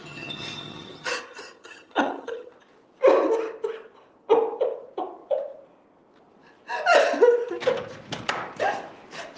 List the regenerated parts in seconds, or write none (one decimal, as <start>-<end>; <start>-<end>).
0.0-2.5